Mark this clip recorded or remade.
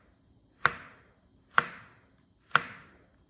recorded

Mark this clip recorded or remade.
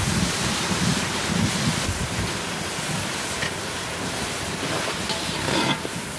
recorded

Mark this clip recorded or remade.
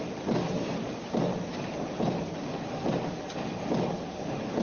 recorded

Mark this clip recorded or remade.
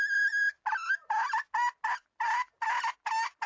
recorded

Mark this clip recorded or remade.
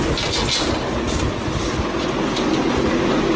recorded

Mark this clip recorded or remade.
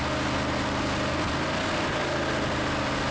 recorded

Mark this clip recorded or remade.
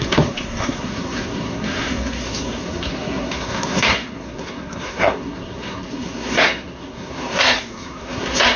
remade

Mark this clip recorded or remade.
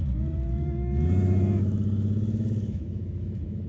remade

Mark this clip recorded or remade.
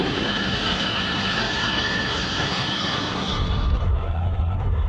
remade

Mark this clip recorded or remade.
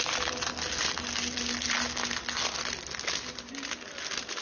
recorded